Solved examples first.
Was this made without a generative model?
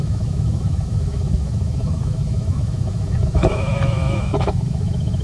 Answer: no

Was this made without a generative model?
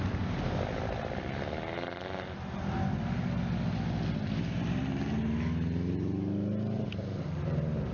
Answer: yes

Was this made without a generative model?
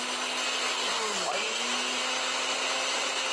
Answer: yes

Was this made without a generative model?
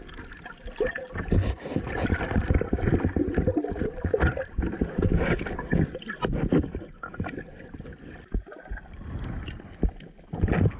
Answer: yes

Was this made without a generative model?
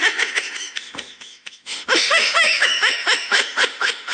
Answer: no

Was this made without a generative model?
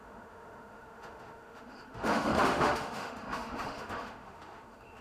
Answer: no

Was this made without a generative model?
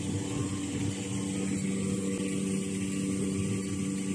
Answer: yes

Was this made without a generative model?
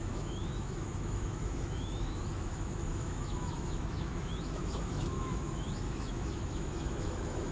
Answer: no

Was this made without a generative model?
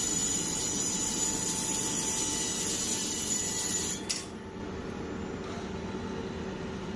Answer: yes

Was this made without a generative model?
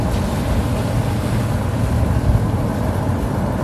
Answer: yes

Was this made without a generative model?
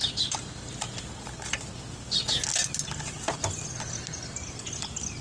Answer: yes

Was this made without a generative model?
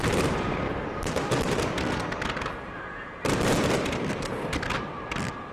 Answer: yes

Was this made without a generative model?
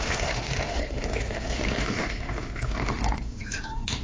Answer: no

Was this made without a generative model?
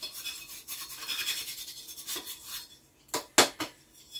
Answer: yes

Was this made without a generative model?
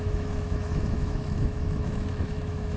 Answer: no